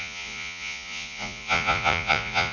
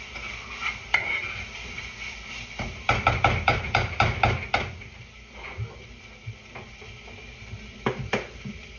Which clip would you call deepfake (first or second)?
first